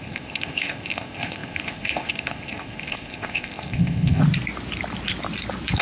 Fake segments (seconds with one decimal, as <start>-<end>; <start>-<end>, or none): 0.0-4.2